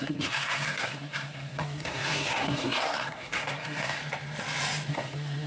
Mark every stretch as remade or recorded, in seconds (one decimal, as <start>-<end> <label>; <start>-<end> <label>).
0.0-4.0 remade; 4.0-4.9 recorded; 4.9-5.5 remade